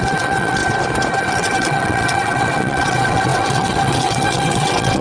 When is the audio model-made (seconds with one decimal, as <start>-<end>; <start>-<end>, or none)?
0.0-0.6; 1.2-5.0